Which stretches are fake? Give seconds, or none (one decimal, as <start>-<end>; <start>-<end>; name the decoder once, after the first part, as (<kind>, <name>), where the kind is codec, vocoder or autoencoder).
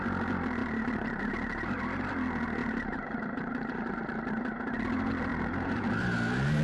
0.6-1.3 (vocoder, BigVGAN v2); 2.6-3.9; 5.3-6.6